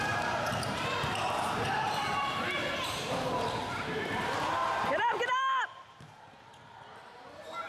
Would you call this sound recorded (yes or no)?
no